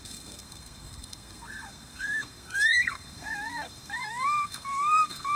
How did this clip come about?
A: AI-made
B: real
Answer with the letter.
A